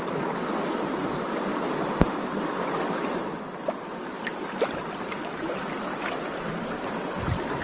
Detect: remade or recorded recorded